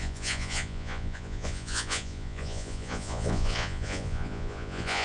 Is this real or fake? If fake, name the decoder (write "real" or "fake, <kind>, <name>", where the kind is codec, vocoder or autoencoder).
fake, vocoder, Vocos